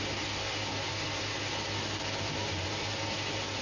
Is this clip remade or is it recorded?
recorded